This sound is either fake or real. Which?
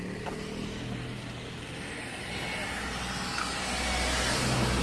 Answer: real